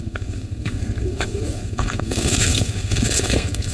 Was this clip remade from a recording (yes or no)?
yes